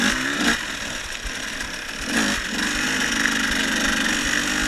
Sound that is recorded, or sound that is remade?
recorded